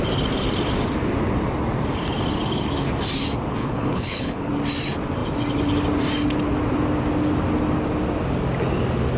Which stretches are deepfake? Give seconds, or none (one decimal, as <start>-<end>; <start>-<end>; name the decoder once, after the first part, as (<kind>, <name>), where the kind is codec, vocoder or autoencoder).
3.6-4.5 (codec, HILCodec)